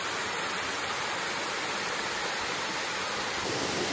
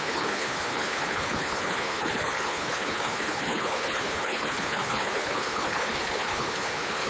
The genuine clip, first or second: first